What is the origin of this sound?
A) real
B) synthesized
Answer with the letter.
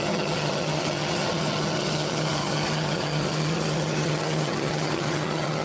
B